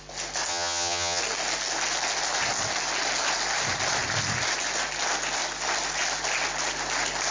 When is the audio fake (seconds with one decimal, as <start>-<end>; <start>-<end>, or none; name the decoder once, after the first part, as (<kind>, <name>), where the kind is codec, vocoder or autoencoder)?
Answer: 0.5-1.2 (vocoder, HiFi-GAN)